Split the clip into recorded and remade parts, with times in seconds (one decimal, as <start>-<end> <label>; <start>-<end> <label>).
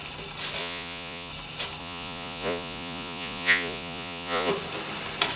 0.0-0.6 recorded; 0.6-1.3 remade; 1.3-1.8 recorded; 1.8-4.5 remade; 4.5-5.4 recorded